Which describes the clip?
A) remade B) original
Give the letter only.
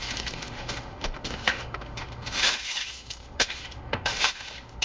A